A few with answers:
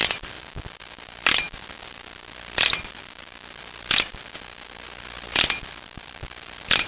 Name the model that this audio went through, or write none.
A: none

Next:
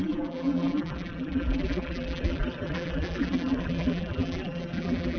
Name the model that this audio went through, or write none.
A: vocoder, BigVGAN v2